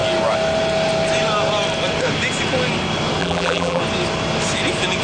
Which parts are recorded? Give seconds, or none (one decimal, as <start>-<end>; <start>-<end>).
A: 0.0-3.2; 3.8-5.0